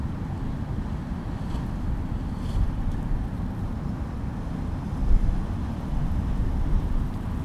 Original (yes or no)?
yes